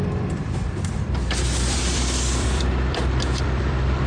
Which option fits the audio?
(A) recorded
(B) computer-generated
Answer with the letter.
B